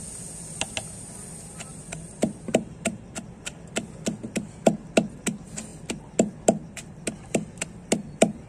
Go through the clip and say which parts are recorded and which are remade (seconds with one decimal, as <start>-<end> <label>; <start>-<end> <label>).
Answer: 0.0-1.7 recorded; 1.7-3.0 remade; 3.0-8.5 recorded